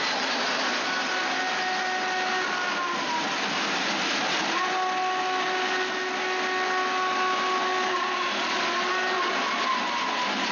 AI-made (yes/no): no